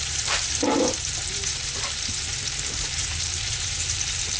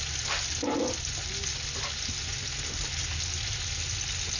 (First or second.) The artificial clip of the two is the first